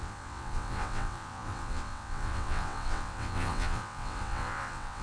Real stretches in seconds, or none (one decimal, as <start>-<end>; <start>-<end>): none